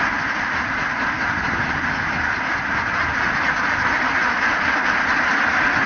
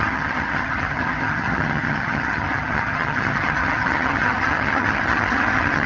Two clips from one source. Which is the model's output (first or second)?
second